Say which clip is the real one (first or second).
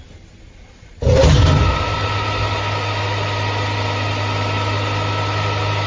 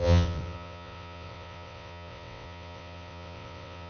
first